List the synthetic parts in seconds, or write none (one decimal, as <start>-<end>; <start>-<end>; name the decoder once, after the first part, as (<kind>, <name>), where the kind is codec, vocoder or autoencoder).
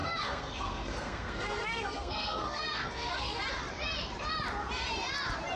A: 0.0-3.4 (codec, SNAC)